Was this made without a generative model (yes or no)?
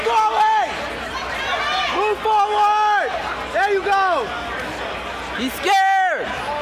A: yes